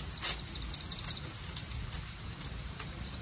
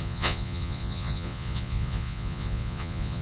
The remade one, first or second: second